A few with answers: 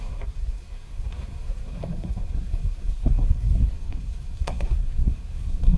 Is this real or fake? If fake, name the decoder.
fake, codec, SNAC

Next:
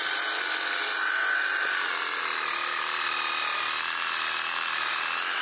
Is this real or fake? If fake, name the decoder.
real